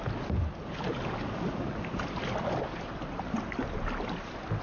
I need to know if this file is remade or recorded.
recorded